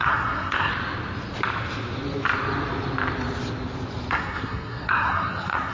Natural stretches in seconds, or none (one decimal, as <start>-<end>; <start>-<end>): 0.7-4.1